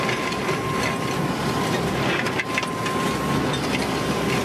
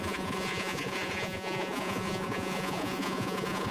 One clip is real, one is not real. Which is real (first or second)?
first